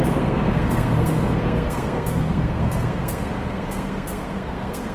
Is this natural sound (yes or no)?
no